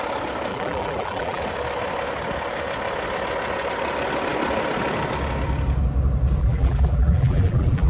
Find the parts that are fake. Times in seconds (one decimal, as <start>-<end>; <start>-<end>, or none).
0.5-1.4; 6.4-7.9